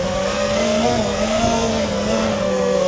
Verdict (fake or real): fake